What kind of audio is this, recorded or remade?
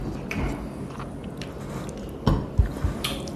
recorded